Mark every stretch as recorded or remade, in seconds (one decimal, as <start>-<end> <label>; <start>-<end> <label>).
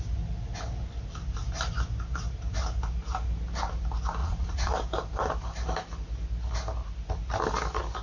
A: 0.0-4.2 recorded; 4.2-4.7 remade; 4.7-8.0 recorded